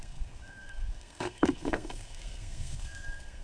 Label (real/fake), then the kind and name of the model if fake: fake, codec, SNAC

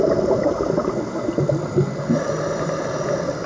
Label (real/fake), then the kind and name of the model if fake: real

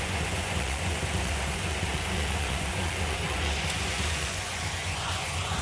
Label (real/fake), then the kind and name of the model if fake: fake, vocoder, Vocos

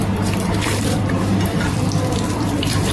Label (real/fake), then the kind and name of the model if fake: fake, vocoder, BigVGAN v2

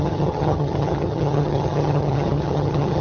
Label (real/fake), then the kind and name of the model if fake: fake, vocoder, HiFi-GAN